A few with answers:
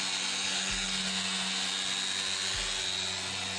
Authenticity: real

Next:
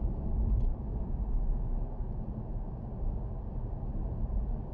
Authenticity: real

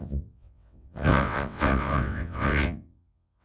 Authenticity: fake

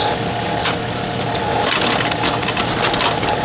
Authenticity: real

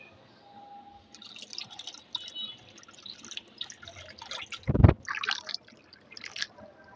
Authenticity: real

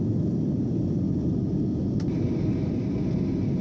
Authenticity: real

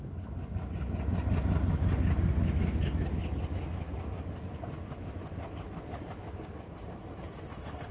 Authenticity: real